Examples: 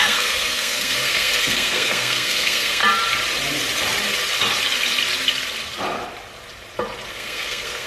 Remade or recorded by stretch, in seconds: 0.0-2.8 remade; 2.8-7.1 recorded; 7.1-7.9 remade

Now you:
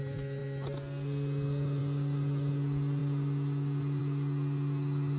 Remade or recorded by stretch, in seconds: 0.0-5.2 recorded